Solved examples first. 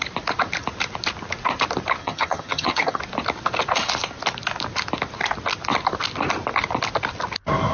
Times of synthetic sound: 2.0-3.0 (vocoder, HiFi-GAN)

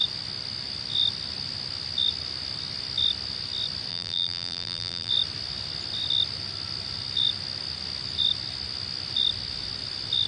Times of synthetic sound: 3.9-5.1 (vocoder, BigVGAN v2)

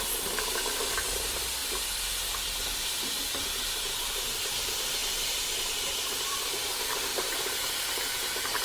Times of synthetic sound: 0.0-1.6 (vocoder, BigVGAN v2); 2.3-8.6

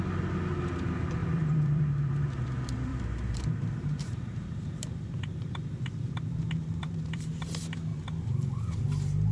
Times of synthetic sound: 1.2-2.4 (vocoder, BigVGAN v2); 2.9-7.4; 7.9-8.5